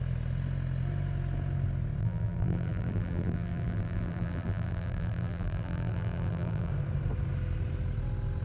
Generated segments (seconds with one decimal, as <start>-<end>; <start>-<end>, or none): 2.0-6.7

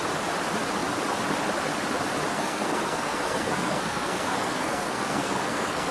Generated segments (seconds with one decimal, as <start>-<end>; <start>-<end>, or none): 2.3-5.9

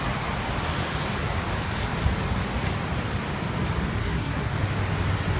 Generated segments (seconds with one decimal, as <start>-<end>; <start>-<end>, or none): 4.0-4.5

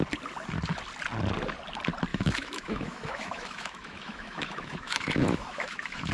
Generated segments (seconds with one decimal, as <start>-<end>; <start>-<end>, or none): 2.1-6.1

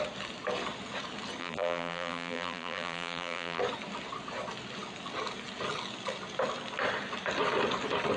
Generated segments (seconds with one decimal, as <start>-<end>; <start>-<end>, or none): 1.4-3.6

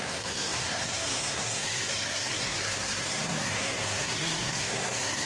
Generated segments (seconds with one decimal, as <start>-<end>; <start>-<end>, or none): 0.0-5.3

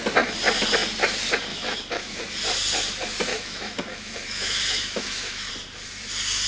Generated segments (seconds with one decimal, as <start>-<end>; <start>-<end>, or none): 1.5-2.2; 3.3-5.5